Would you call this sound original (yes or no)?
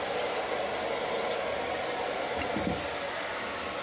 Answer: yes